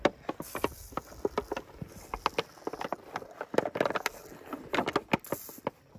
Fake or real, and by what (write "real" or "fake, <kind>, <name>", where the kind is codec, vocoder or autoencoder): real